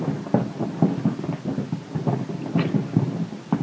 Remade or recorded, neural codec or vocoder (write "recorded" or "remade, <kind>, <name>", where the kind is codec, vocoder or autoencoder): recorded